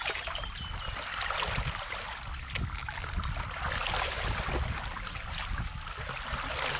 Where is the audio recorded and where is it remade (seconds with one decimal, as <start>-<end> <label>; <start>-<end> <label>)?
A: 0.0-6.8 recorded